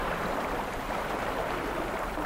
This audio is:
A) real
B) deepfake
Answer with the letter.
A